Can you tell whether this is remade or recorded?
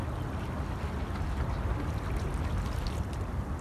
recorded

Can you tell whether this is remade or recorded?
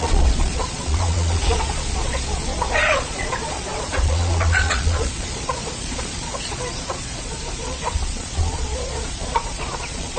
remade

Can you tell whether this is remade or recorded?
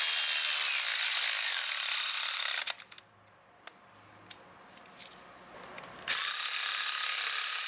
recorded